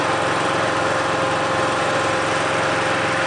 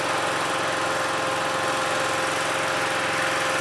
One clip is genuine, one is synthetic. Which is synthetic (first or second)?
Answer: first